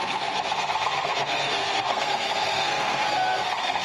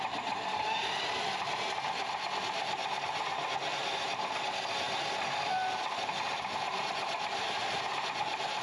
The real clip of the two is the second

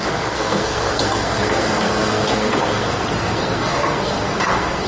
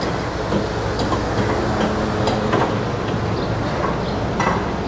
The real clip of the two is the second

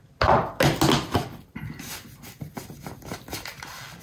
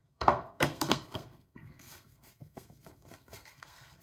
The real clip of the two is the first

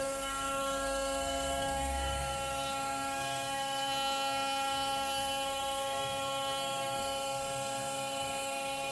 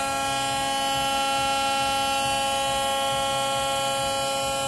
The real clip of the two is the second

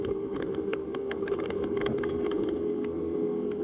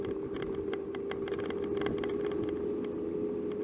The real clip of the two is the second